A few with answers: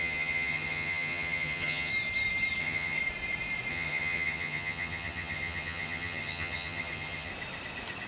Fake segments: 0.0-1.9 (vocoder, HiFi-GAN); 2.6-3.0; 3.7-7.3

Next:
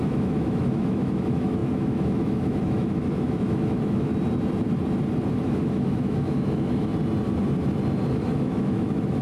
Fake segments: 0.0-4.1 (autoencoder, DAC-VAE); 5.3-6.9; 8.1-9.2

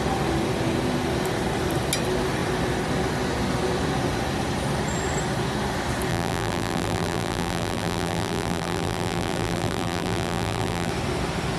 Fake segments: 6.1-10.9 (vocoder, BigVGAN v2)

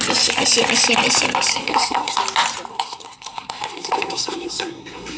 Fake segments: 1.5-2.2 (codec, SNAC); 2.7-5.2

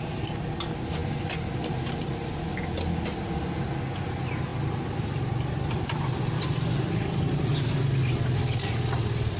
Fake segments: none